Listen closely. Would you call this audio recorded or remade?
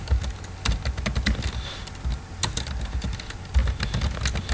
recorded